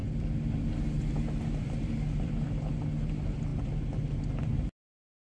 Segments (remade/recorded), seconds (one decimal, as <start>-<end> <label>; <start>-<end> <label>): 0.0-3.1 remade; 3.1-5.2 recorded